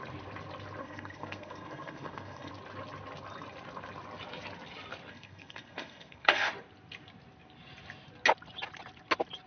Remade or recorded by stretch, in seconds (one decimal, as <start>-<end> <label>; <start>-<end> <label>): 0.0-0.8 recorded; 0.8-2.5 remade; 2.5-5.1 recorded; 5.1-6.5 remade; 6.5-9.5 recorded